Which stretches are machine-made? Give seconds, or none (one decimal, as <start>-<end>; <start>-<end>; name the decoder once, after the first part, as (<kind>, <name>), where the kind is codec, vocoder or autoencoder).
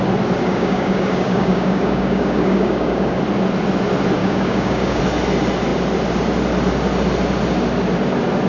0.4-3.2 (codec, DAC); 4.2-5.0